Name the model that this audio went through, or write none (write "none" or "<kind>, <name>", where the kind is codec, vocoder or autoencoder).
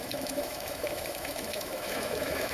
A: autoencoder, DAC-VAE